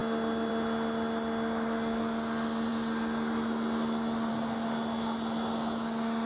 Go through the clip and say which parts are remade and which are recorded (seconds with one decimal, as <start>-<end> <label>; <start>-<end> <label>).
0.0-6.3 recorded